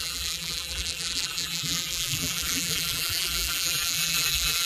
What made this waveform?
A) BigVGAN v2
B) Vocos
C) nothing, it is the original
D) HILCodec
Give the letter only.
A